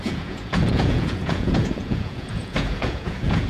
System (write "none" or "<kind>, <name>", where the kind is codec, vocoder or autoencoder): vocoder, Vocos